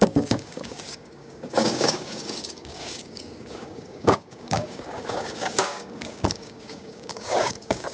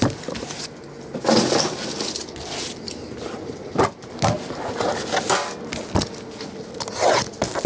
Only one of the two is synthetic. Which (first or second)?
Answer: first